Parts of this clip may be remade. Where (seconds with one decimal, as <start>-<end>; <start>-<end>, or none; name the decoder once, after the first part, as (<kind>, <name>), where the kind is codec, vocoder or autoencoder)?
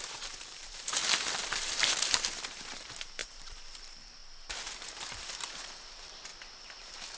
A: 0.0-4.2 (vocoder, BigVGAN v2); 5.2-6.3